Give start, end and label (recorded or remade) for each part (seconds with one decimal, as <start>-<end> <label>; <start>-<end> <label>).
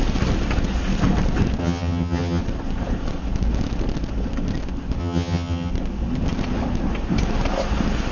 0.0-1.6 recorded; 1.6-2.4 remade; 2.4-5.0 recorded; 5.0-5.7 remade; 5.7-8.1 recorded